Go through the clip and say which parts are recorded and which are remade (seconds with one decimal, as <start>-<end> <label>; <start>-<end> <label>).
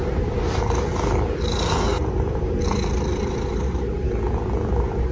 0.0-0.9 remade; 0.9-1.9 recorded; 1.9-2.6 remade; 2.6-3.1 recorded; 3.1-4.1 remade; 4.1-5.1 recorded